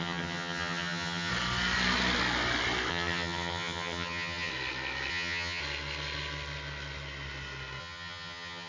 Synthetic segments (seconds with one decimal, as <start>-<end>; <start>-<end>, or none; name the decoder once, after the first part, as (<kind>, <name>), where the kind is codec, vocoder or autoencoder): 0.0-1.3 (vocoder, HiFi-GAN); 2.9-4.5; 5.1-5.6; 7.8-8.7